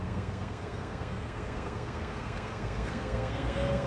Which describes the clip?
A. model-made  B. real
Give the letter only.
A